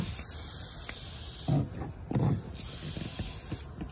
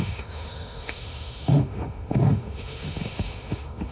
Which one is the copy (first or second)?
second